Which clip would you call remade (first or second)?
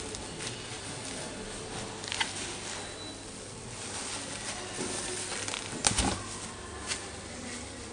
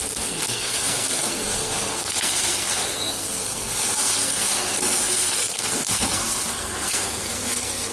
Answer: second